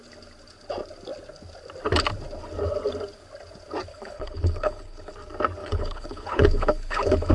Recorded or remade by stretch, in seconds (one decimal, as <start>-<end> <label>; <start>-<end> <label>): 0.0-3.9 recorded; 3.9-5.1 remade; 5.1-5.6 recorded; 5.6-7.3 remade